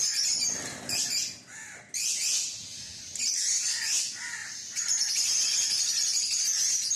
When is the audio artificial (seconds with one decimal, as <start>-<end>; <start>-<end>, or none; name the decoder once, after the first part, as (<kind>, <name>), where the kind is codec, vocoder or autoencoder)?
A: 4.4-5.1 (vocoder, BigVGAN v2)